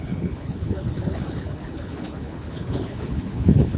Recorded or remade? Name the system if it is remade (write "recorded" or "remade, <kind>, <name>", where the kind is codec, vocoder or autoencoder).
remade, codec, HILCodec